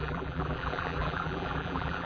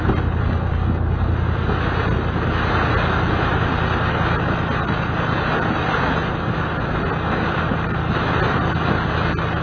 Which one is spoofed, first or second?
first